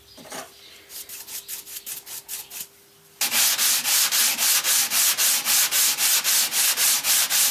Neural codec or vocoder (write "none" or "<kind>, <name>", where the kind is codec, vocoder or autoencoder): none